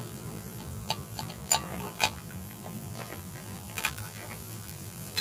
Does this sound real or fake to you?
fake